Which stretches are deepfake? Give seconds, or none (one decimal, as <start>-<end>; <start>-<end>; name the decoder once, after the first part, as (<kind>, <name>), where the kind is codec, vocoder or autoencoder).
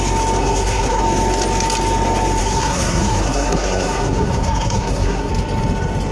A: 0.4-1.0 (codec, SNAC); 2.4-5.3